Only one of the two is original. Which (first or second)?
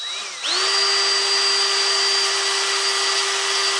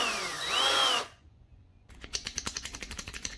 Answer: first